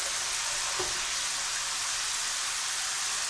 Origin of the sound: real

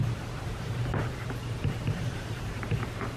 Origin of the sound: fake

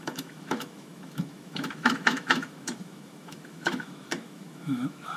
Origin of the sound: fake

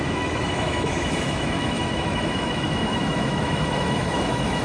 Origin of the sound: fake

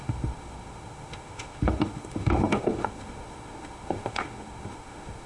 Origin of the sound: fake